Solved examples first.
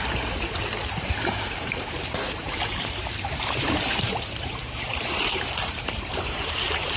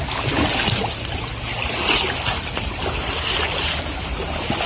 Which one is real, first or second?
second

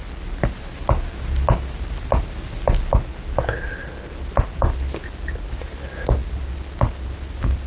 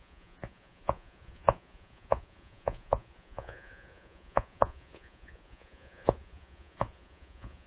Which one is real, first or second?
first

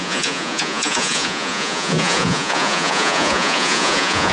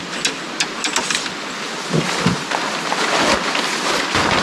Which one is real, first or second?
second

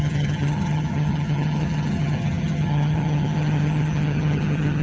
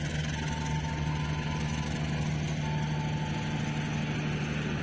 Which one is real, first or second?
second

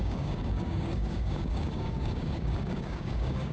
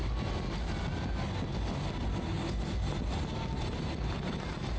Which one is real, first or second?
second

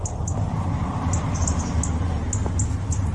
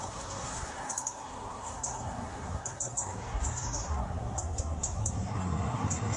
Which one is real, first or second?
first